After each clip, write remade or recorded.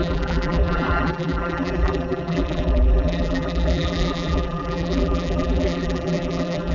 remade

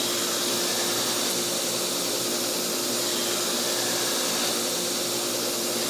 recorded